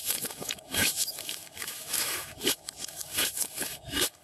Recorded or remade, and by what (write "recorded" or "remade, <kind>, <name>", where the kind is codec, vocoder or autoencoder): remade, autoencoder, DAC-VAE